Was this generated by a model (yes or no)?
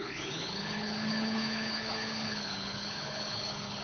yes